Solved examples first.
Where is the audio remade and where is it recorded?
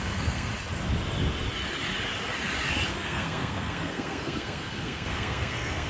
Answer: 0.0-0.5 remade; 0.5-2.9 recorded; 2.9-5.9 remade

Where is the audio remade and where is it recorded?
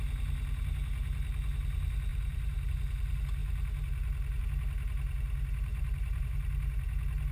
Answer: 0.0-2.1 recorded; 2.1-2.7 remade; 2.7-5.7 recorded; 5.7-6.3 remade; 6.3-7.3 recorded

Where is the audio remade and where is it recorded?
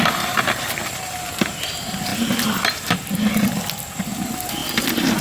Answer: 0.0-5.2 recorded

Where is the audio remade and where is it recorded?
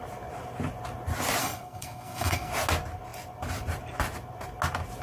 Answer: 0.0-1.4 recorded; 1.4-2.5 remade; 2.5-5.0 recorded